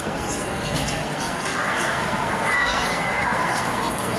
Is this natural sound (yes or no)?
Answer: no